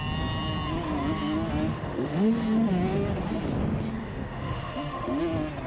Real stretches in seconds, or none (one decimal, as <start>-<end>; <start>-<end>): 0.0-1.7; 2.3-4.0; 5.2-5.7